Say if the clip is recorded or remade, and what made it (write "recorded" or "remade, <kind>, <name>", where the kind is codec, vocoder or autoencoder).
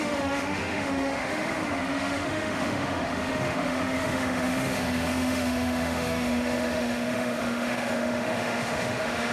remade, autoencoder, DAC-VAE